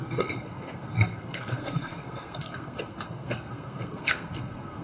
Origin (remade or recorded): remade